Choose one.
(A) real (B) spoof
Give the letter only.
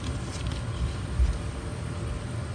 A